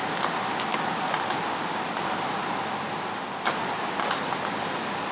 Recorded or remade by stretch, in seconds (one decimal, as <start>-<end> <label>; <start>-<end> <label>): 0.0-5.1 recorded